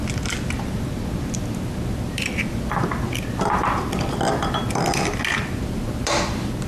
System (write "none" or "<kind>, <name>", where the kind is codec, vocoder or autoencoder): none